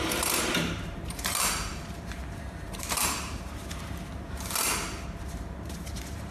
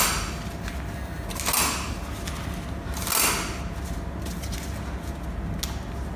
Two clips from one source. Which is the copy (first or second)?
first